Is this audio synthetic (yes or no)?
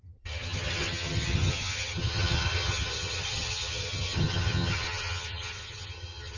yes